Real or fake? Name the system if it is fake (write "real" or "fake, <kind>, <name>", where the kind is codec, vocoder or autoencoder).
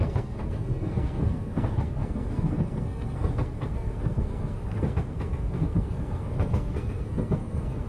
fake, codec, SNAC